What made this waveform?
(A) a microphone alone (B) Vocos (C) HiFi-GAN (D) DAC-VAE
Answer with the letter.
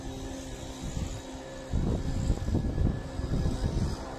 A